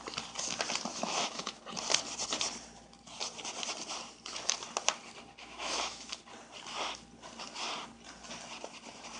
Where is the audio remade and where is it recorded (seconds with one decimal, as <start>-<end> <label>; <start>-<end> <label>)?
0.0-0.9 recorded; 0.9-1.6 remade; 1.6-5.4 recorded; 5.4-6.2 remade; 6.2-9.2 recorded